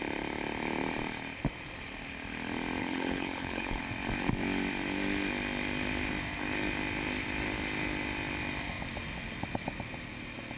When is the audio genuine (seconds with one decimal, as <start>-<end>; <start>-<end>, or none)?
0.0-2.8; 3.8-10.6

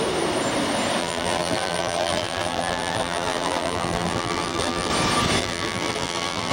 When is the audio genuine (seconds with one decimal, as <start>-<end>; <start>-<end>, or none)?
0.0-1.0; 4.9-5.4

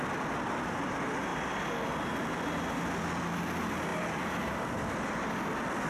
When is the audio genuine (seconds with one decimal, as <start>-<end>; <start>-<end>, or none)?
0.0-5.9

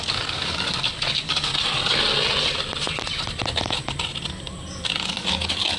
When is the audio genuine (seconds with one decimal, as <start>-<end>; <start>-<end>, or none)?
1.5-5.0

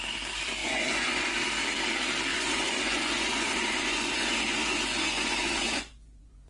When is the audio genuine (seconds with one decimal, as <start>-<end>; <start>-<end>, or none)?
0.0-0.6; 1.3-2.3

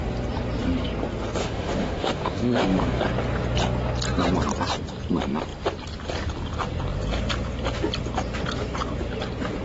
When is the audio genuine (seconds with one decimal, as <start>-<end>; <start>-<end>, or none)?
0.0-1.4; 3.0-9.6